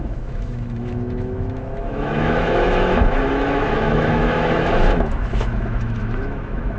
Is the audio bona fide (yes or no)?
no